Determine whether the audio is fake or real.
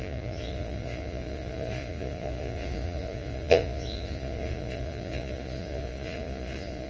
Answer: fake